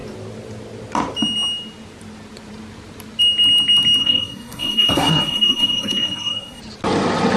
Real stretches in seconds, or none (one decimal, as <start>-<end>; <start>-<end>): 0.0-4.0; 6.6-7.4